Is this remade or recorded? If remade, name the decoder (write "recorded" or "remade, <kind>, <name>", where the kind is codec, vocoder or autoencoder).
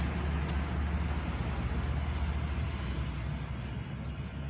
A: recorded